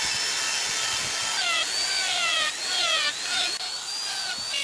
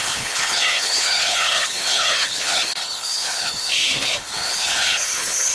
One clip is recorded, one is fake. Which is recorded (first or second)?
first